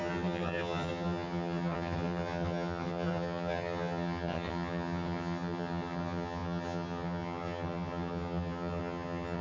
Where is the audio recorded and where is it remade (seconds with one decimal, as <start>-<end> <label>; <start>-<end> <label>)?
0.0-9.4 remade